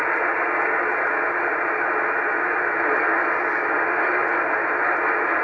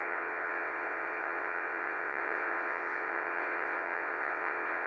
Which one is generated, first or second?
second